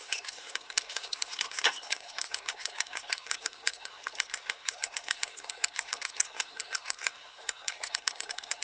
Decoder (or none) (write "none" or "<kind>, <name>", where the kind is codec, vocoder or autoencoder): codec, SNAC